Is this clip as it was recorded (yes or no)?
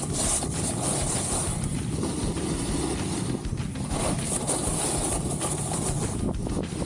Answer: yes